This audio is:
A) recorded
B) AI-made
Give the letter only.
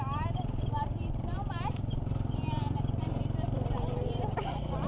B